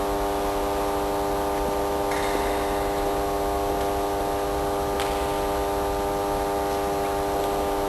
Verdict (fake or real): real